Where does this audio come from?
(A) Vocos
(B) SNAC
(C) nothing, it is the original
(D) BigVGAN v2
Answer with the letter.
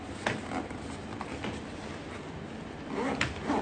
C